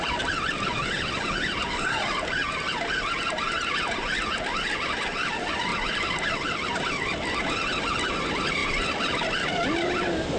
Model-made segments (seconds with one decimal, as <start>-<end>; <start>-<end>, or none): 5.7-7.8; 8.6-10.4